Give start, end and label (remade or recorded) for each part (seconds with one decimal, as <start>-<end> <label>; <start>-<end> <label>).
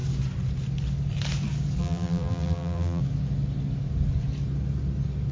0.0-1.8 recorded; 1.8-3.0 remade; 3.0-5.3 recorded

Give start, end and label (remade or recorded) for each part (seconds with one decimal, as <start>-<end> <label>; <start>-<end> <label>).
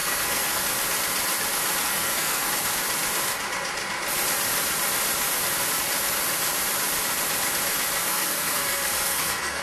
0.0-0.6 remade; 0.6-1.8 recorded; 1.8-2.5 remade; 2.5-8.0 recorded; 8.0-9.6 remade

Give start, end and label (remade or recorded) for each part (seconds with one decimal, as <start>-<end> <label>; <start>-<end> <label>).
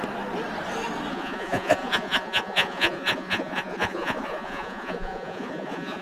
0.0-1.1 recorded; 1.1-6.0 remade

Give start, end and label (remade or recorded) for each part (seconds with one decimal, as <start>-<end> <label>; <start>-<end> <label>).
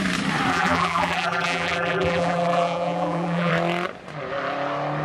0.0-0.5 recorded; 0.5-3.5 remade; 3.5-5.0 recorded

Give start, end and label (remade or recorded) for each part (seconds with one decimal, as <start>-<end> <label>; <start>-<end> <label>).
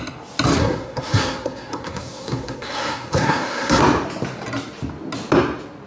0.0-0.6 recorded; 0.6-3.8 remade; 3.8-5.9 recorded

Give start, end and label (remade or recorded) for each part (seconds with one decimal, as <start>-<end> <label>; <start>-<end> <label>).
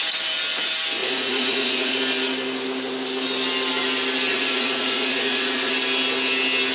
0.0-1.0 recorded; 1.0-2.0 remade; 2.0-4.3 recorded; 4.3-5.7 remade; 5.7-6.7 recorded